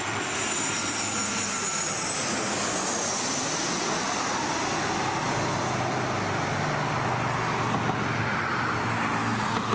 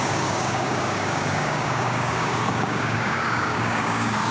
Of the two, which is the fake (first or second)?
second